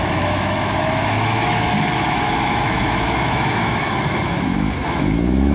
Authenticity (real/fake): fake